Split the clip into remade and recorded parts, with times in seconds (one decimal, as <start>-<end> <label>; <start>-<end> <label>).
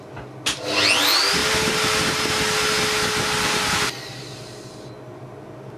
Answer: 0.0-5.8 recorded